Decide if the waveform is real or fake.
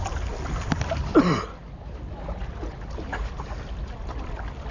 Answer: real